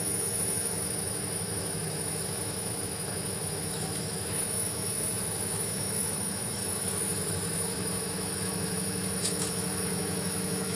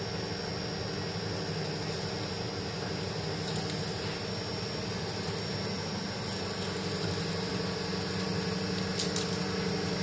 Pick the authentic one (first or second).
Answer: second